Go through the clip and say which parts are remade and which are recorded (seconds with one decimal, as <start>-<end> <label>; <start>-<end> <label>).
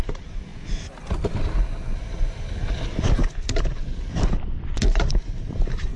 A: 0.0-6.0 recorded